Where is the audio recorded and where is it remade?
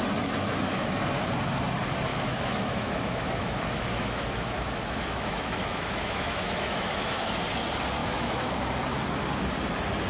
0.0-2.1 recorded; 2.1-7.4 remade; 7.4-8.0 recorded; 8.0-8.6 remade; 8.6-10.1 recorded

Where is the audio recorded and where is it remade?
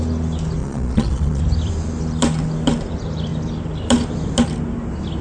0.0-0.6 recorded; 0.6-1.4 remade; 1.4-5.2 recorded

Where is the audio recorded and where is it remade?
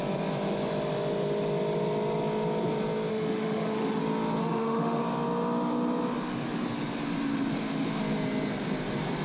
0.0-3.1 recorded; 3.1-4.0 remade; 4.0-4.4 recorded; 4.4-5.0 remade; 5.0-9.2 recorded